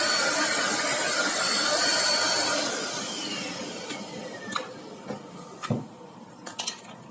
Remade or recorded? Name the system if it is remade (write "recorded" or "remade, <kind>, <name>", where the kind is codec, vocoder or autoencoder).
recorded